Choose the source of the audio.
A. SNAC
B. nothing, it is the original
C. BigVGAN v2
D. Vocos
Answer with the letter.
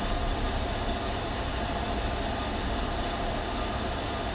B